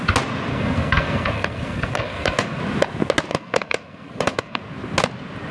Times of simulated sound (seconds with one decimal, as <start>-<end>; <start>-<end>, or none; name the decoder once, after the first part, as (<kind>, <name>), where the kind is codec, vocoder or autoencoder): 0.5-2.6 (codec, SNAC); 3.3-4.6